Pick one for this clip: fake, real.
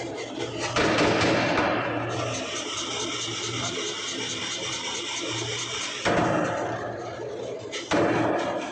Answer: real